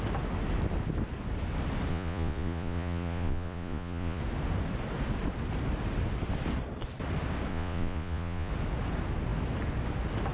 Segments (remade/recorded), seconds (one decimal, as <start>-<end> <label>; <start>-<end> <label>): 0.0-1.9 recorded; 1.9-4.2 remade; 4.2-7.5 recorded; 7.5-8.5 remade; 8.5-10.3 recorded